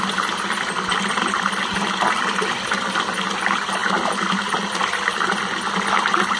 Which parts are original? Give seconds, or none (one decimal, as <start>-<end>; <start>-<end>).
0.0-6.4